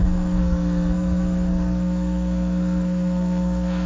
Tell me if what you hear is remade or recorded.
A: remade